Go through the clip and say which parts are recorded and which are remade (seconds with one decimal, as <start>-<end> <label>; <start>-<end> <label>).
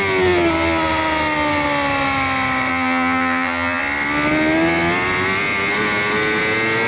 0.0-2.7 recorded; 2.7-3.8 remade; 3.8-6.9 recorded